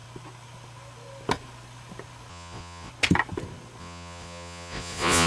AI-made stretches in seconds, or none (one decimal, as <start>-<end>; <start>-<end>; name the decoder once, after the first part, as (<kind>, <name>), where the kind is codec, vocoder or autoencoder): 2.3-2.9 (vocoder, Vocos); 3.8-5.3